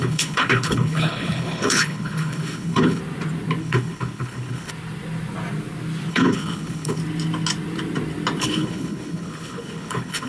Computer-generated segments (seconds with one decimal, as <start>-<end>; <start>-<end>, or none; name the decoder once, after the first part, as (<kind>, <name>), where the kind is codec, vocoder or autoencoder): 0.0-3.0 (codec, HILCodec); 3.6-4.7; 6.1-7.0; 8.4-10.3

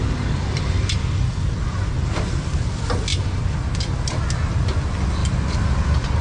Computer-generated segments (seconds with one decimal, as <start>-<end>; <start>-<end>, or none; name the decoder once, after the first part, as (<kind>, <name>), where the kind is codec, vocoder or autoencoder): none

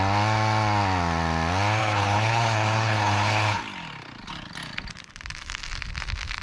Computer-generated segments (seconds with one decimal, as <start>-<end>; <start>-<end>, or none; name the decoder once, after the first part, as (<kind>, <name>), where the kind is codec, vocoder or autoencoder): 1.8-3.6 (codec, HILCodec)

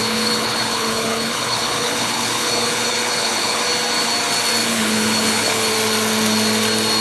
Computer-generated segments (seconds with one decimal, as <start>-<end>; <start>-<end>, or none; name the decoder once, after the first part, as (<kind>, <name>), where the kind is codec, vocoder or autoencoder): 0.0-3.6 (codec, HILCodec); 4.6-5.7

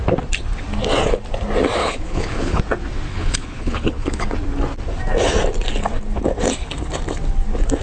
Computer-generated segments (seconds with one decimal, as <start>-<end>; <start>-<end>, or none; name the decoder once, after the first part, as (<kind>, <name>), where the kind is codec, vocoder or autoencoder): 1.8-2.6 (codec, HILCodec); 3.1-4.2

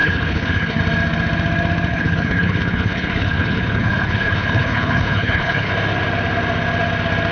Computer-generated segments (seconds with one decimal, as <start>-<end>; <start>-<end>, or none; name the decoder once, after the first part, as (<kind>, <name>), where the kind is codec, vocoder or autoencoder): 0.0-0.8 (codec, HILCodec); 1.9-5.7